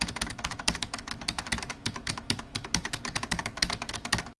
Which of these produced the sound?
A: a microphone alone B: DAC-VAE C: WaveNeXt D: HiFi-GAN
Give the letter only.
B